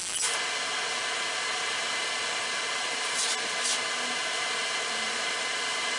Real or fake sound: real